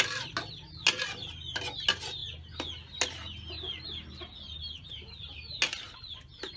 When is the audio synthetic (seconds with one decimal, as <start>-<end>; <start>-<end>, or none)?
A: none